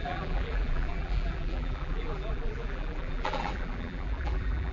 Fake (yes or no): yes